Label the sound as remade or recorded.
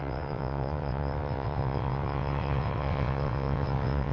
remade